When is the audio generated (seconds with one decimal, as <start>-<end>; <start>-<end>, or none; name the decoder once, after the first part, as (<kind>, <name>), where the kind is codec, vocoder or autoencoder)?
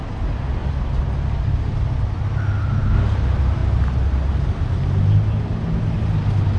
none